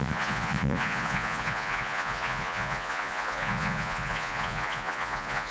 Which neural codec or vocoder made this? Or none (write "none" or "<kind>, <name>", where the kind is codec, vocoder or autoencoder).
vocoder, Vocos